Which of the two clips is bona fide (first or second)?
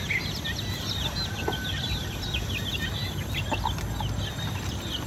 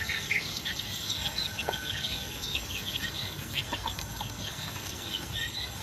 first